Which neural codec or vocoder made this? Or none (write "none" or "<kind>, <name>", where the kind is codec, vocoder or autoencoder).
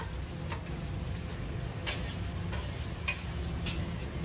none